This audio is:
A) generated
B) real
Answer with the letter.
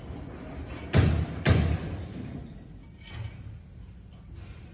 B